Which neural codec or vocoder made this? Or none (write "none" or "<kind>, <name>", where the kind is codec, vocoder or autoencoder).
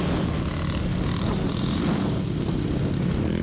none